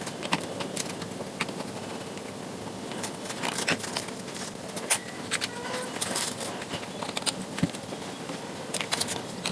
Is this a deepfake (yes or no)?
no